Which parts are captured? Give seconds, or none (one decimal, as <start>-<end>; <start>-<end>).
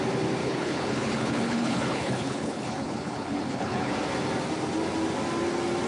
0.0-0.4; 3.9-5.9